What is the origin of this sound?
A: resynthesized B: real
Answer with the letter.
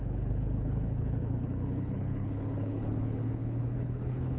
A